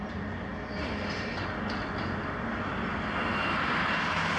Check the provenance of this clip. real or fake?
real